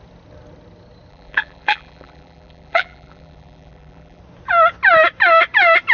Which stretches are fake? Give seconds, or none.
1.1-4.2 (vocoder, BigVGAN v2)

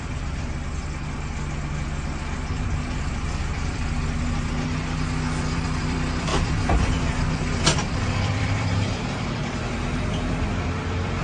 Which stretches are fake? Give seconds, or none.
0.0-0.8 (vocoder, BigVGAN v2); 3.4-11.2

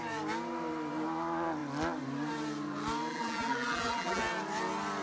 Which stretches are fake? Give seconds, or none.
3.1-4.2 (vocoder, BigVGAN v2)

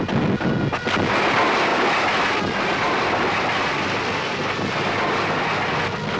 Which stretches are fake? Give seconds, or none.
none

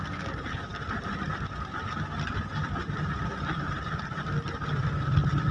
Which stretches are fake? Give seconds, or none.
0.0-5.5 (vocoder, BigVGAN v2)

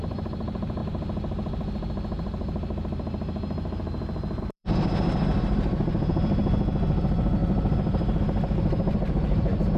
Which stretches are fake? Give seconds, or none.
0.0-0.8 (vocoder, BigVGAN v2); 4.4-6.4; 7.0-9.8

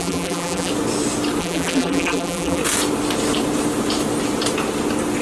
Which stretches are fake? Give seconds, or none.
0.0-0.7 (vocoder, BigVGAN v2); 1.4-2.6